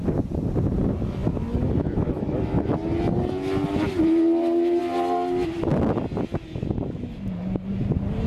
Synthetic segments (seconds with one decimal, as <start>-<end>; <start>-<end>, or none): none